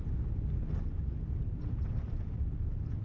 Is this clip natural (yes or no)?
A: yes